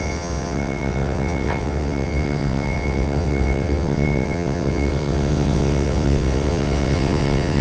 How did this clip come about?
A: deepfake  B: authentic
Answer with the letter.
A